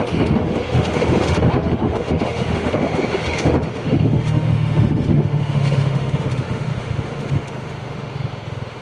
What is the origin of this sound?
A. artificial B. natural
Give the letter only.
A